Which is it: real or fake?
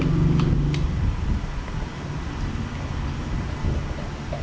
real